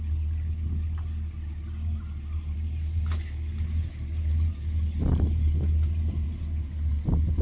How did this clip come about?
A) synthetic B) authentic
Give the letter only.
B